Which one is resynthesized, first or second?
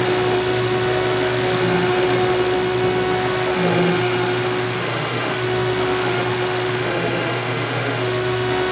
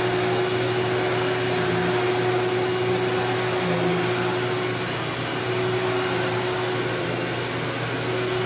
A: first